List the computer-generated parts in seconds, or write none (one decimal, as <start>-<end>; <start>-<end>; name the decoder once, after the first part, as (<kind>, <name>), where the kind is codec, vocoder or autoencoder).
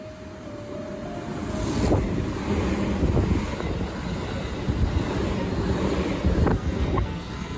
6.5-7.6 (codec, SNAC)